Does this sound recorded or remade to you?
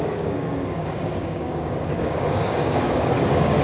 remade